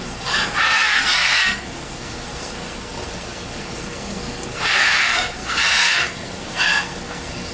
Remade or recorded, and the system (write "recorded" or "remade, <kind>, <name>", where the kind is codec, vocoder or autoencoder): remade, codec, SNAC